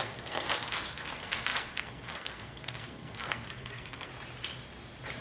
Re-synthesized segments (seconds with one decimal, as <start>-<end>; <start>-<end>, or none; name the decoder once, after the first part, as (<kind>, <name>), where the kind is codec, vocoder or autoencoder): 0.0-4.1 (codec, SNAC)